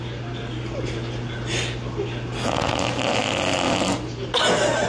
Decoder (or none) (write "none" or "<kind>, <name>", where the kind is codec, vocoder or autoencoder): none